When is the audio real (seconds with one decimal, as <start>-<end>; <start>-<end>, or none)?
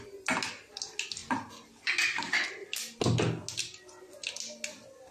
0.0-5.1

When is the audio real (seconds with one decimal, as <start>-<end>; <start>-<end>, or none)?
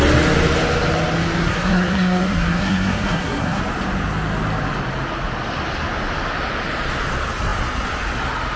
0.0-1.4; 3.6-8.6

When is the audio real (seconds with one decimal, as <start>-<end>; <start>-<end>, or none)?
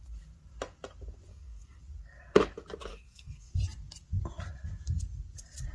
0.0-1.3; 1.8-2.9; 3.5-5.7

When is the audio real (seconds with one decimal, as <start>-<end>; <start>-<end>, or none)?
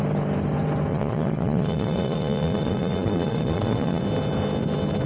0.0-0.9; 4.0-5.1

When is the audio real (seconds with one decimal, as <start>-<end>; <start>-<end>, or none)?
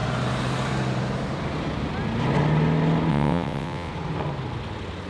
0.0-3.1; 3.9-5.1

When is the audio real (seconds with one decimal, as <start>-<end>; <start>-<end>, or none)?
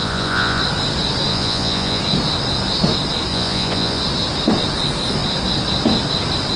0.6-1.3; 2.0-3.3; 4.0-6.6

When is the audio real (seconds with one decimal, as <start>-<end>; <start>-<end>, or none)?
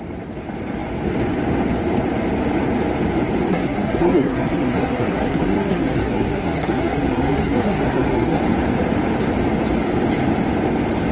0.0-3.5; 8.4-11.1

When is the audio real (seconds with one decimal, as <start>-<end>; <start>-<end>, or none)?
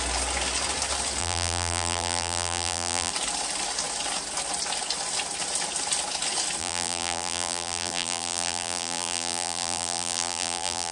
0.0-1.2; 3.1-6.6